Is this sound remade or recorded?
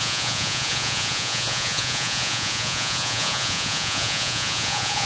remade